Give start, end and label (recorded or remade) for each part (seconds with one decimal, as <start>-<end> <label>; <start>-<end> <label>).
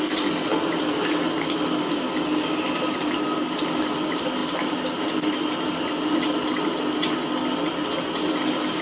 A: 0.0-8.8 recorded